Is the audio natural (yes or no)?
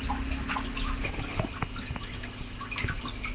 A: yes